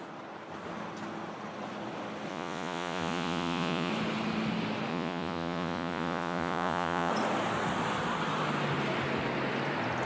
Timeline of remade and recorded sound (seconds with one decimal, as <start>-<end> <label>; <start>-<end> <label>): 0.0-2.3 recorded; 2.3-3.9 remade; 3.9-4.9 recorded; 4.9-7.1 remade; 7.1-10.1 recorded